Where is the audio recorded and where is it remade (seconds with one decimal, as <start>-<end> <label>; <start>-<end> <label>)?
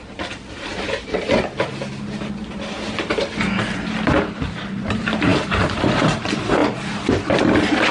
0.0-7.9 remade